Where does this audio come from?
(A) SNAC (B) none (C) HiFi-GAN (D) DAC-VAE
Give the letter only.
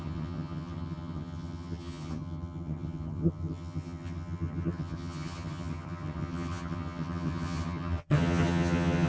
C